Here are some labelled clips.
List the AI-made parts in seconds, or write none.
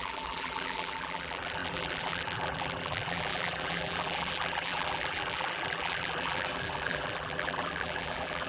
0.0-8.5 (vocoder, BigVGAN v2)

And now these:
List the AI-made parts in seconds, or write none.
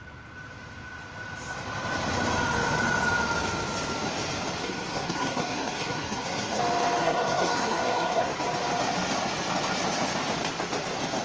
4.6-6.6 (codec, SNAC); 7.0-8.3